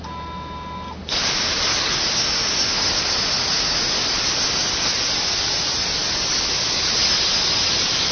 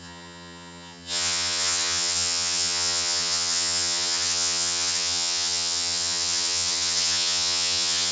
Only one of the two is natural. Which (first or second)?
first